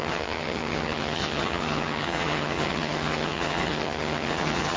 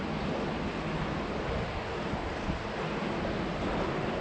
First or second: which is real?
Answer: second